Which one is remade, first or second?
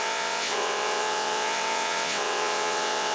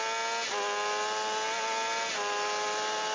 first